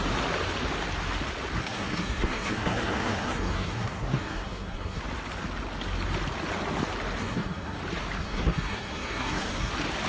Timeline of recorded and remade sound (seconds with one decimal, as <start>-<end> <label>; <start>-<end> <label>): 0.0-1.6 recorded; 1.6-5.0 remade; 5.0-7.2 recorded; 7.2-7.8 remade; 7.8-8.2 recorded; 8.2-9.7 remade; 9.7-10.1 recorded